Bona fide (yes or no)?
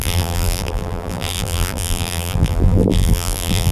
no